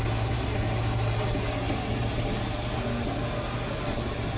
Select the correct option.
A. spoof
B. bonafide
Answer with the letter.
B